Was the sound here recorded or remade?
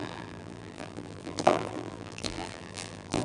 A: remade